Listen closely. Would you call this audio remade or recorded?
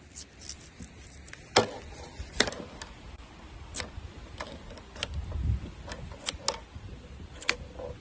recorded